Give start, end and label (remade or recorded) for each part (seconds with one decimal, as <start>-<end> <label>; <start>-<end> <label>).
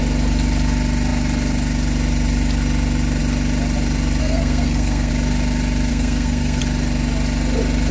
0.0-4.2 recorded; 4.2-5.1 remade; 5.1-5.9 recorded; 5.9-6.6 remade; 6.6-7.9 recorded